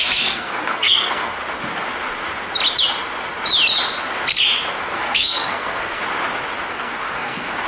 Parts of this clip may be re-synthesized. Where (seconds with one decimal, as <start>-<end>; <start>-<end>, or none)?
0.0-1.4; 4.8-6.0; 6.7-7.7